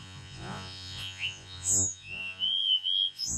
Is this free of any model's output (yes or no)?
no